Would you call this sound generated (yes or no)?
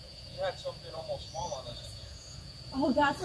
yes